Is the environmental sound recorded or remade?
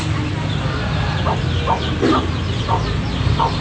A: recorded